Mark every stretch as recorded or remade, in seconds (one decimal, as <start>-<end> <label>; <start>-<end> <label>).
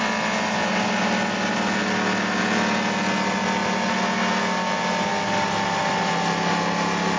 0.0-7.2 recorded